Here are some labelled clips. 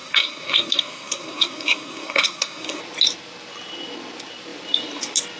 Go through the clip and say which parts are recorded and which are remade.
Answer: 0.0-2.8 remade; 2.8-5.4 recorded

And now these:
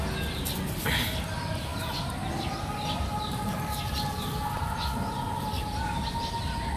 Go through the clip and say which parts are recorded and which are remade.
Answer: 0.0-6.8 recorded

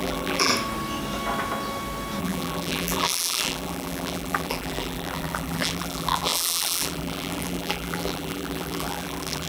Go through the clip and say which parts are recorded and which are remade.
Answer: 0.0-0.5 remade; 0.5-2.2 recorded; 2.2-9.5 remade